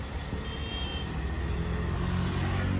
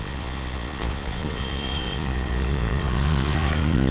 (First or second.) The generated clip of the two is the second